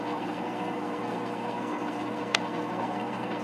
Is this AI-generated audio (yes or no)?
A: yes